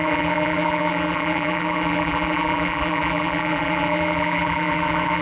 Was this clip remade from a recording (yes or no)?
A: yes